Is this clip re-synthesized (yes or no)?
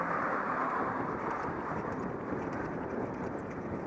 yes